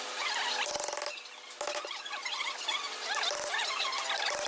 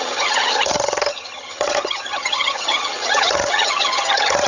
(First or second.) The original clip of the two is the first